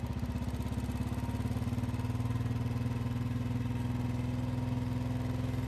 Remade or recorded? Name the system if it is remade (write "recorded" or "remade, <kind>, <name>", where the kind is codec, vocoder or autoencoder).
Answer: recorded